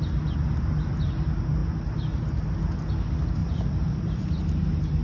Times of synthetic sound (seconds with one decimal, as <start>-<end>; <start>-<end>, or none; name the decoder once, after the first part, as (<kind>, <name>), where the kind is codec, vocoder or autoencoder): 1.6-2.6 (vocoder, BigVGAN v2); 3.4-4.2